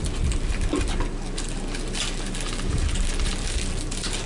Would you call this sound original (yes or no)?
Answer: yes